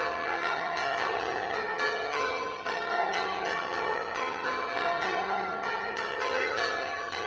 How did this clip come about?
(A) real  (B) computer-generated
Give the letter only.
B